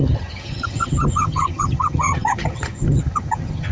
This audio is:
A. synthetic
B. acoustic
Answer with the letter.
A